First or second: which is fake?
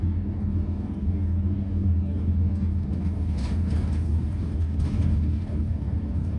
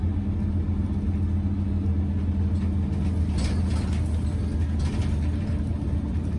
first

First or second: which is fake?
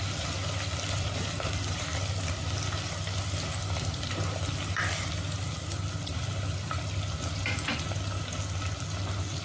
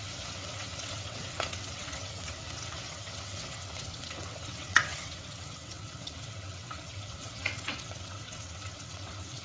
second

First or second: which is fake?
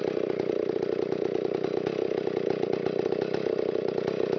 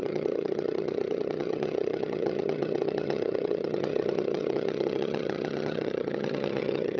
second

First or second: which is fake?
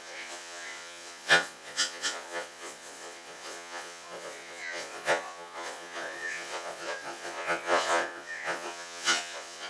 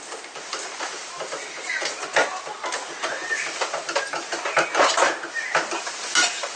first